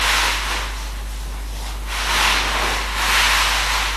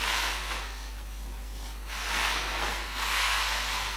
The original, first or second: first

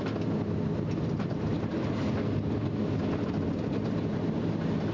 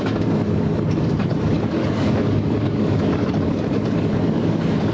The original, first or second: first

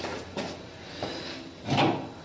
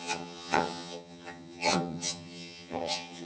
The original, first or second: first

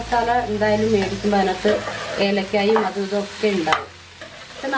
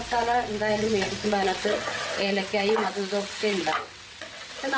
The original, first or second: first